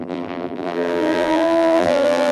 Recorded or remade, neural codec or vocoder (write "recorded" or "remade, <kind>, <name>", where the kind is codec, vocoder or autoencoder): remade, vocoder, BigVGAN v2